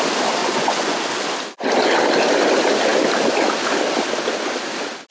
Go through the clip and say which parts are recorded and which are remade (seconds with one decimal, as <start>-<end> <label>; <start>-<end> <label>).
0.0-0.4 recorded; 0.4-1.0 remade; 1.0-5.1 recorded